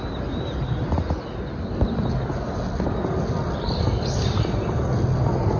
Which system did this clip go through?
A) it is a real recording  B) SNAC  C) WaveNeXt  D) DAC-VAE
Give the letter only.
A